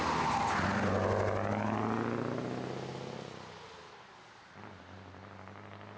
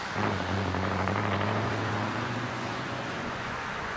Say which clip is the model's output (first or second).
second